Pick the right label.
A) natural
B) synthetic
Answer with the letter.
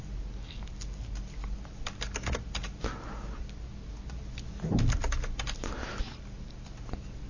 A